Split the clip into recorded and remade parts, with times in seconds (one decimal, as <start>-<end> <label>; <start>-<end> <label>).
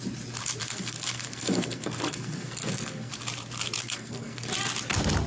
0.0-0.6 recorded; 0.6-3.1 remade; 3.1-3.8 recorded; 3.8-4.5 remade; 4.5-5.3 recorded